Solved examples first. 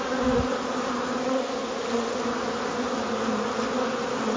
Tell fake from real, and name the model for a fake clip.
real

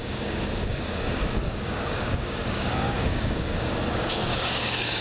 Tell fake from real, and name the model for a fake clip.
fake, codec, DAC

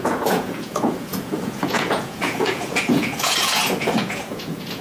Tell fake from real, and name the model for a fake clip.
fake, vocoder, Vocos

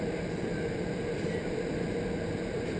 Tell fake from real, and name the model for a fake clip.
fake, vocoder, BigVGAN v2